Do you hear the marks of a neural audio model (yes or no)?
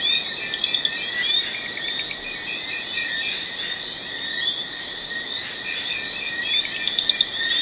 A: no